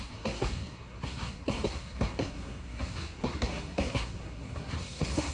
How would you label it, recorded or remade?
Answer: remade